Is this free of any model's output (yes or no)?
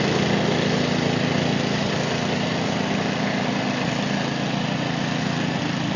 yes